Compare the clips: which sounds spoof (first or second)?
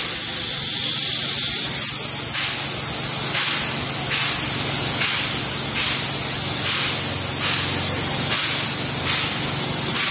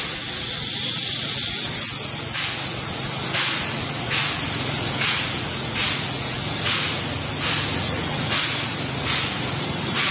second